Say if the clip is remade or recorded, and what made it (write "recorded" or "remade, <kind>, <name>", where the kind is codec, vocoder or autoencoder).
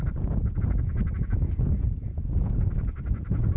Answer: remade, vocoder, Vocos